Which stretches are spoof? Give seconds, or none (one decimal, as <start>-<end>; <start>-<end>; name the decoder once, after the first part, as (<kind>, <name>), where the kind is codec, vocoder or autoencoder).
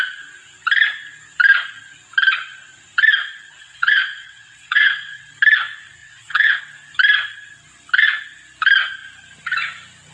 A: 3.6-5.3 (vocoder, WaveNeXt); 6.0-6.6